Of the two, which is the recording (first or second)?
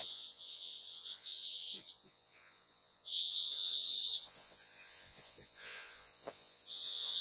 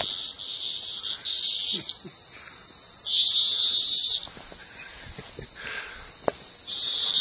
second